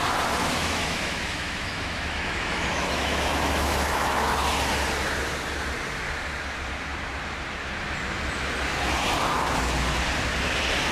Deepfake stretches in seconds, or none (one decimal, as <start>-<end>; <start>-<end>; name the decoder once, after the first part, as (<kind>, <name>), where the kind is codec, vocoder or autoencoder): 0.4-4.5 (autoencoder, DAC-VAE)